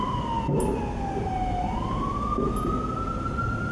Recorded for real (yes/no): yes